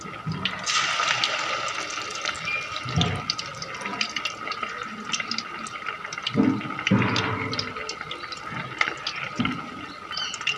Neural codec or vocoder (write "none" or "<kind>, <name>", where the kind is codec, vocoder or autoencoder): none